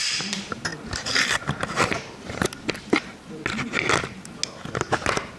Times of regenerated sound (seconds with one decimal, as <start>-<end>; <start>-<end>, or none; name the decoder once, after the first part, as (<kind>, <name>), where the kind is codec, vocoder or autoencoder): none